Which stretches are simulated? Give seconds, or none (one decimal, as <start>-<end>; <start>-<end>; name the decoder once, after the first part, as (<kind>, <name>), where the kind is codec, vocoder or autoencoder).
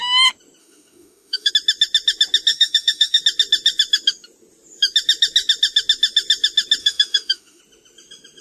0.6-1.5 (autoencoder, DAC-VAE); 2.5-3.2; 6.8-7.6